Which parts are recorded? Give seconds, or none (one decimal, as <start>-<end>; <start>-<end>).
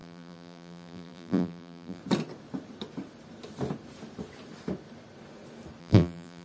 2.0-5.8